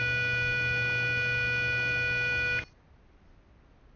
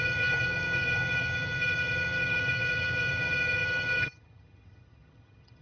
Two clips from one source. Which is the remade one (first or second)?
second